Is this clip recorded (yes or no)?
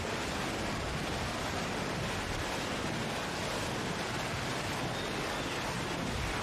yes